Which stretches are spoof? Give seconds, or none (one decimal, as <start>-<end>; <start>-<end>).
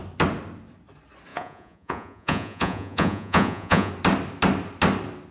1.3-3.9